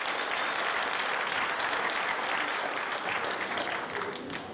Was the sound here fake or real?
real